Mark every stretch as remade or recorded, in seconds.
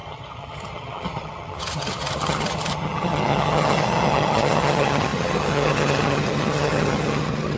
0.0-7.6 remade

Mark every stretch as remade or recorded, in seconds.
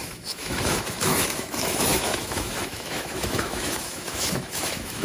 0.0-5.0 remade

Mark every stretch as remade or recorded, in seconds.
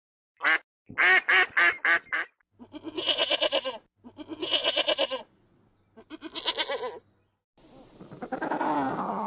0.0-9.3 recorded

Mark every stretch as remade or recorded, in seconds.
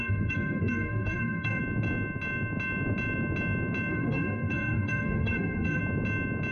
0.0-1.6 remade; 1.6-3.9 recorded; 3.9-5.8 remade; 5.8-6.5 recorded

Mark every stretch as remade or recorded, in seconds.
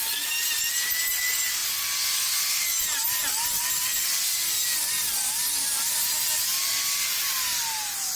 0.0-8.2 recorded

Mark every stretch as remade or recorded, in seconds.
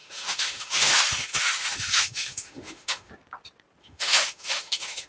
0.0-3.1 remade; 3.1-3.8 recorded; 3.8-5.1 remade